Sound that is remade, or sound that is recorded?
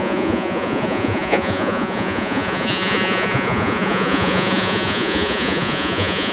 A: remade